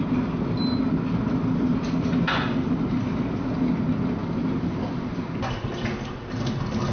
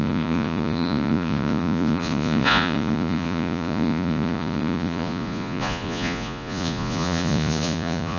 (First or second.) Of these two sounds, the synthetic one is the second